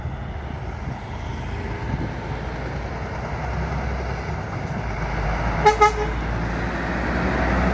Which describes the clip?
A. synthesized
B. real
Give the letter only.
B